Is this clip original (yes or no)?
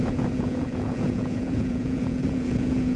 no